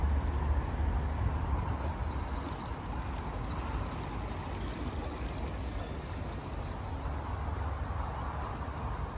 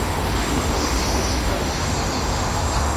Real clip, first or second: first